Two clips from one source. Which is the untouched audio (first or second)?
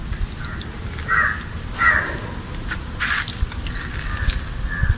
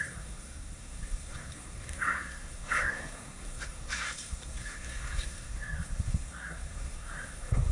first